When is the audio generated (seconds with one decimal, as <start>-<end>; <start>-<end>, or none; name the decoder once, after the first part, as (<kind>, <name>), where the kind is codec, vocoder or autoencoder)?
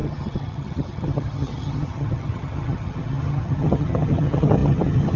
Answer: 0.0-5.2 (vocoder, HiFi-GAN)